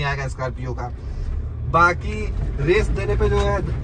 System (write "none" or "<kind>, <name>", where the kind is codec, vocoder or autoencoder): none